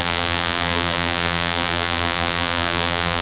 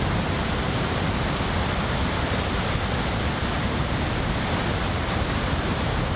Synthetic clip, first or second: first